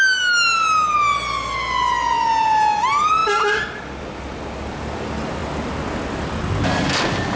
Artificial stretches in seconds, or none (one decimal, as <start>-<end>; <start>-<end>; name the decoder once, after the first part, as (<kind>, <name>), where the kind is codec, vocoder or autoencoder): none